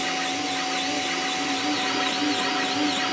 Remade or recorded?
recorded